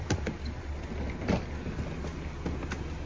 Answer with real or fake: real